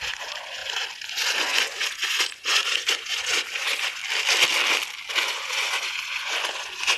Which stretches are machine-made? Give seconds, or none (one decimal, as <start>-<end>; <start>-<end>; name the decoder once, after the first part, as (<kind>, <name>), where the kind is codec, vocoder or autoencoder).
0.0-4.0 (vocoder, Vocos); 5.1-7.0